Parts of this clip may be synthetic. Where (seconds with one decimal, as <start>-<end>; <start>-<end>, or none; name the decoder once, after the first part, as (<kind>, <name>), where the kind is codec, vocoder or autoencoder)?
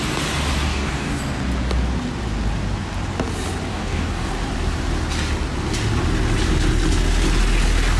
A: 0.7-1.2 (codec, DAC); 3.7-4.3